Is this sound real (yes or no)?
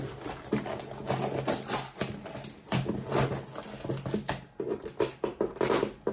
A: yes